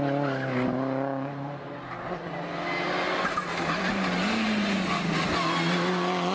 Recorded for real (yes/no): yes